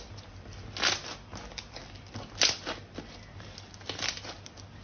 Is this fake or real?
real